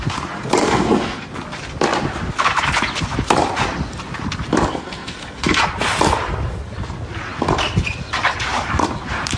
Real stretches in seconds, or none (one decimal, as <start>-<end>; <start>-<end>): 0.0-0.6; 1.3-4.8; 5.6-9.4